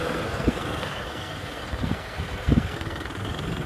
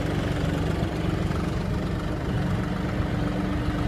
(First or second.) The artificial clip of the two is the first